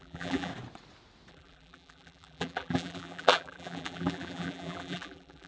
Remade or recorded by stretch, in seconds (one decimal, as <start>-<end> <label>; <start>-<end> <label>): 0.0-0.5 remade; 0.5-1.3 recorded; 1.3-5.5 remade